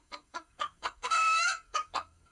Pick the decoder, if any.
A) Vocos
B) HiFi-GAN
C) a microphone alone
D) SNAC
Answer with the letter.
D